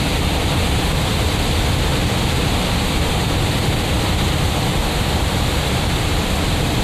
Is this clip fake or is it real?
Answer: real